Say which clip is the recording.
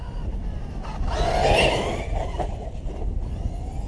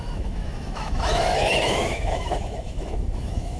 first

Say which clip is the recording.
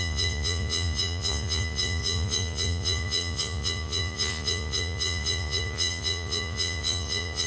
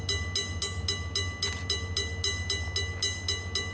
second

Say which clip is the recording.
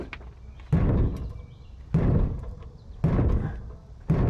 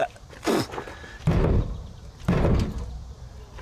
first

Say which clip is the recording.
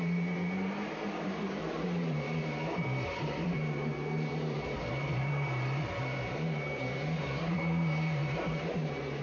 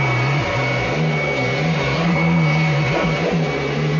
second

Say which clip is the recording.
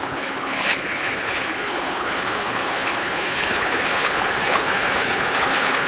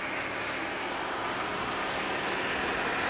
second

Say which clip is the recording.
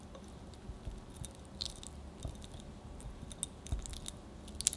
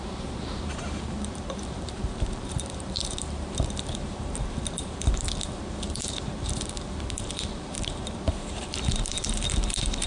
first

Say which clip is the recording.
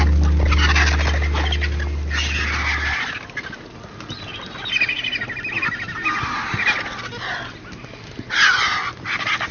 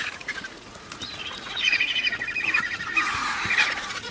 first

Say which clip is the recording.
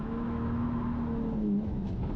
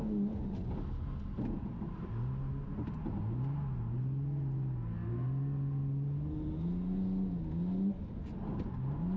second